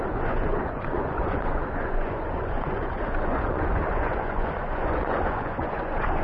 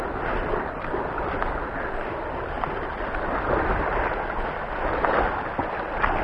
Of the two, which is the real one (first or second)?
second